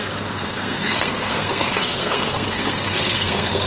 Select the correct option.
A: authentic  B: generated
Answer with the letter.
B